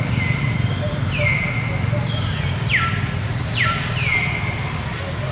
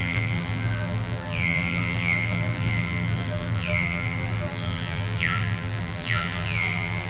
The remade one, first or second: second